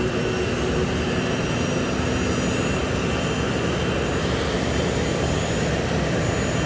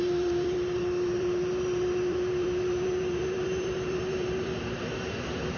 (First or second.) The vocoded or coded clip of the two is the second